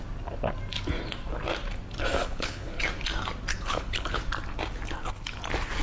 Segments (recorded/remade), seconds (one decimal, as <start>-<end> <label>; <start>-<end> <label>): 0.0-2.2 recorded; 2.2-2.8 remade; 2.8-3.5 recorded; 3.5-4.2 remade; 4.2-5.8 recorded

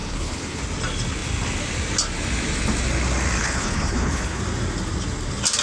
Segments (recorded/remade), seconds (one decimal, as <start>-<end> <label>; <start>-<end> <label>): 0.0-0.6 remade; 0.6-3.4 recorded; 3.4-4.4 remade; 4.4-5.6 recorded

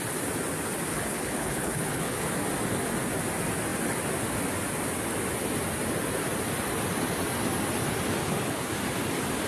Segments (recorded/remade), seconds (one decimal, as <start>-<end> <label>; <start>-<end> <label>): 0.0-0.9 recorded; 0.9-2.3 remade; 2.3-8.2 recorded; 8.2-8.7 remade; 8.7-9.5 recorded

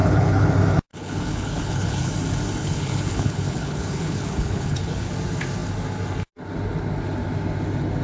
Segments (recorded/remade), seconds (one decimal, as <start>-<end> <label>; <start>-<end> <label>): 0.0-0.5 remade; 0.5-0.9 recorded; 0.9-2.1 remade; 2.1-2.6 recorded; 2.6-5.1 remade; 5.1-8.0 recorded